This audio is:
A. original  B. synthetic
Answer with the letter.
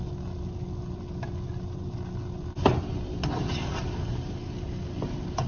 A